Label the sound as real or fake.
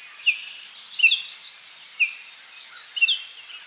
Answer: real